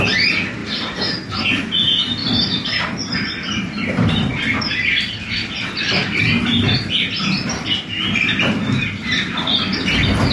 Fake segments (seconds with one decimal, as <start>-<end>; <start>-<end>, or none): 0.6-1.4; 2.2-6.2